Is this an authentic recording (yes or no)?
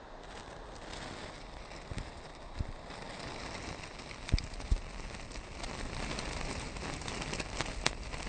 yes